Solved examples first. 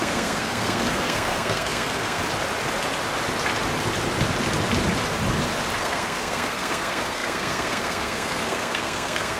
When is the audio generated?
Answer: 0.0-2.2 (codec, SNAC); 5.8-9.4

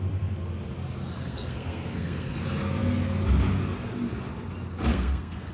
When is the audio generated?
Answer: 1.2-2.4 (codec, SNAC); 4.9-5.5

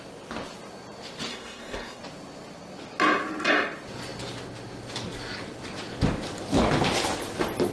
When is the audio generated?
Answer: 1.3-2.0 (codec, SNAC)

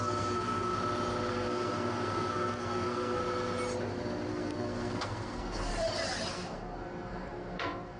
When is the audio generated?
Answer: 0.0-0.7 (codec, SNAC); 1.3-3.2; 4.3-5.7; 6.3-8.0

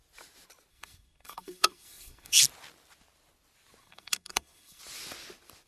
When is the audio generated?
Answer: 0.7-2.4 (codec, SNAC); 3.8-4.8

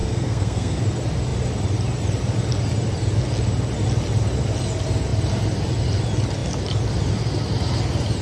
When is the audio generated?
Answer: 0.0-0.8 (codec, SNAC)

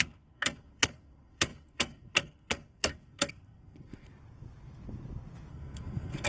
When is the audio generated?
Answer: 0.0-4.1 (codec, SNAC); 5.5-6.3